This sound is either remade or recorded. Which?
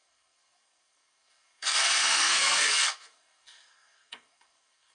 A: remade